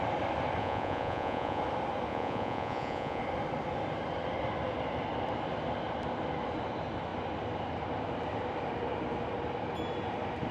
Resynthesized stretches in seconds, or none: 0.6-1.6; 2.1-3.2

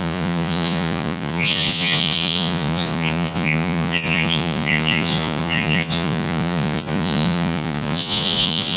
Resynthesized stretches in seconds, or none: 0.0-8.8

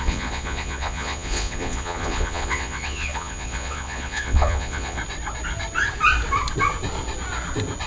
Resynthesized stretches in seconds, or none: 0.0-5.0

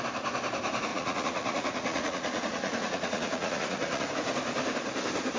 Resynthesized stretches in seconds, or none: 0.9-4.1

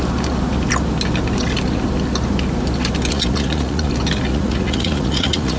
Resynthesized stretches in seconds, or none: 3.1-3.9; 4.3-5.6